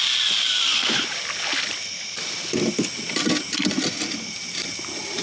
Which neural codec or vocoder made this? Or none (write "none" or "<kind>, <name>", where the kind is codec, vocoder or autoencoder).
none